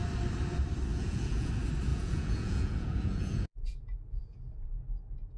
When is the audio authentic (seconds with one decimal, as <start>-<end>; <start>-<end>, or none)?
0.0-0.9; 1.5-1.9; 4.5-5.4